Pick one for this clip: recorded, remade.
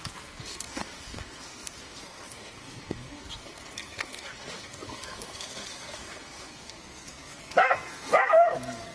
remade